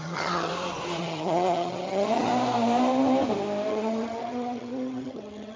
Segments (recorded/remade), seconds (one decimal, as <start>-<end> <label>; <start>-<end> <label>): 0.0-0.5 remade; 0.5-1.0 recorded; 1.0-2.3 remade; 2.3-3.7 recorded; 3.7-5.6 remade